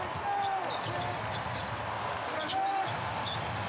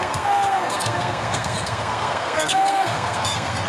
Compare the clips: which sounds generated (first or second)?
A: second